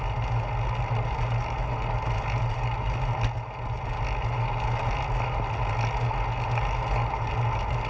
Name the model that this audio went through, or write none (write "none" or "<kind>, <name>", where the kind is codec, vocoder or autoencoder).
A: none